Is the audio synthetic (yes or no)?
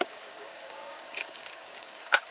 yes